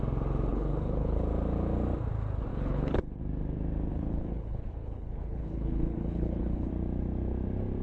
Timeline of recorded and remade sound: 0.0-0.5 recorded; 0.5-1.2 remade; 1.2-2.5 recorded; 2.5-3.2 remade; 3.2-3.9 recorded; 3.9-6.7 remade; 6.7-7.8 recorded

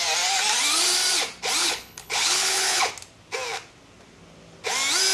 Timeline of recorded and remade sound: 0.0-1.6 recorded; 1.6-2.9 remade; 2.9-5.1 recorded

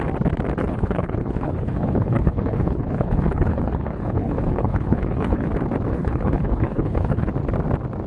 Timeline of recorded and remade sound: 0.0-0.6 recorded; 0.6-5.5 remade; 5.5-5.9 recorded; 5.9-7.3 remade; 7.3-8.1 recorded

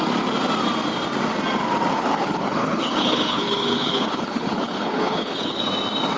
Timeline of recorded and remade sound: 0.0-1.9 recorded; 1.9-5.6 remade; 5.6-6.2 recorded